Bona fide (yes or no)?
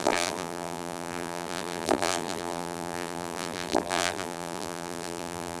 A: no